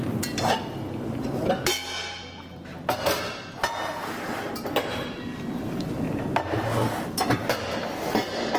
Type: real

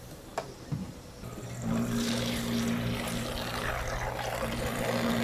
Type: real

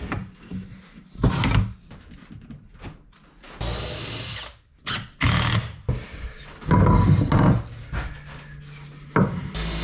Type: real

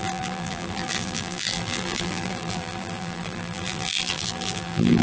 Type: fake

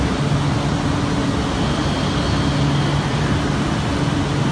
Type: real